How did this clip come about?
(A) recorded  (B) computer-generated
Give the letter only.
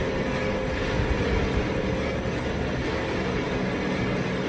A